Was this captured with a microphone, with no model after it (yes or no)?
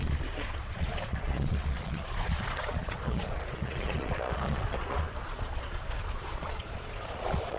no